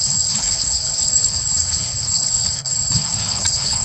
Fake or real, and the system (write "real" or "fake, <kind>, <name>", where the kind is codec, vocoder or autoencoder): fake, codec, HILCodec